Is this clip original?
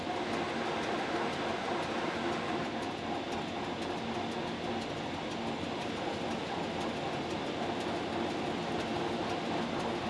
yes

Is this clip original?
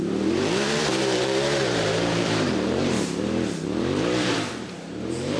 no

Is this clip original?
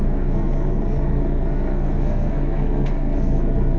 no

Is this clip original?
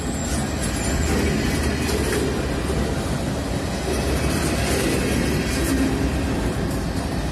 yes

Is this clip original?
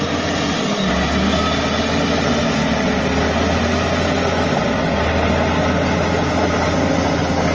yes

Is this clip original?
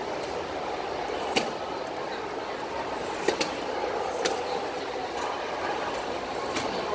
yes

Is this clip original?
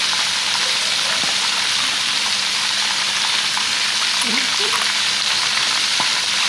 no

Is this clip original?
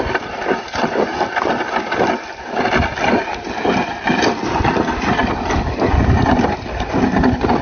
yes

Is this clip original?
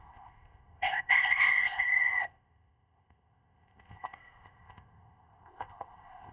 no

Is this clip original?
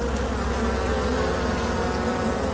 yes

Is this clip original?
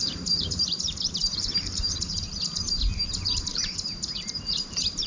no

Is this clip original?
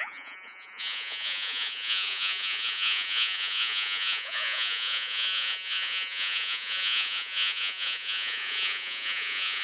no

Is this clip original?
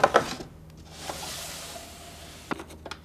yes